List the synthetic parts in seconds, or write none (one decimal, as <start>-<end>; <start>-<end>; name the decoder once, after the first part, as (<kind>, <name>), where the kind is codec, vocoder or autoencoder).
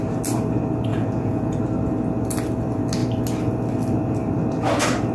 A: 0.9-1.6 (vocoder, Vocos)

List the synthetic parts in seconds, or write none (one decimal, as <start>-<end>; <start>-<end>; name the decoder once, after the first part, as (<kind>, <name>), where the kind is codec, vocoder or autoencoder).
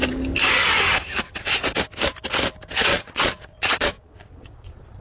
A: 2.9-5.0 (vocoder, Vocos)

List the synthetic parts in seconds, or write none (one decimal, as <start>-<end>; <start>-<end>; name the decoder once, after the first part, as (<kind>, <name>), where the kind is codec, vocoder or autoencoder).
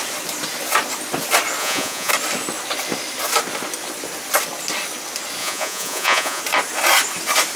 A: 1.6-2.1 (vocoder, Vocos); 5.4-6.4